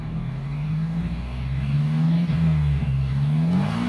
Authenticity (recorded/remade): remade